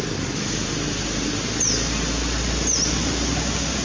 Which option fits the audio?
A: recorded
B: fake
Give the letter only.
A